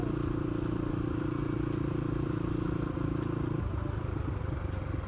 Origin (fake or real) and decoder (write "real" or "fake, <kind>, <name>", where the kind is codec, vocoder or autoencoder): real